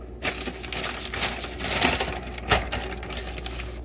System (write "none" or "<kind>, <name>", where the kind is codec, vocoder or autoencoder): none